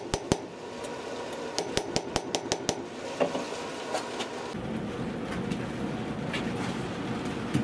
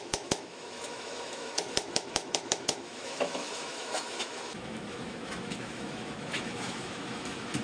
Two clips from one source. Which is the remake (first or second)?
second